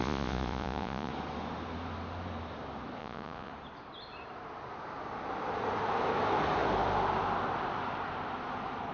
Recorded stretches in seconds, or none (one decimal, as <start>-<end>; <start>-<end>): 1.1-3.0; 3.5-8.9